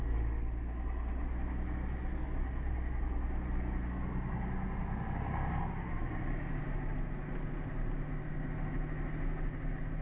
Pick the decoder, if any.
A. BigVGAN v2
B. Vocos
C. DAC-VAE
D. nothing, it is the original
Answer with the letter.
D